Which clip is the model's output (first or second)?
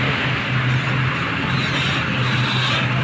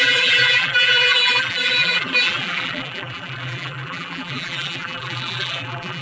second